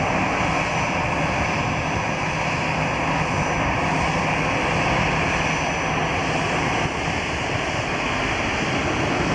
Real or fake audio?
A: real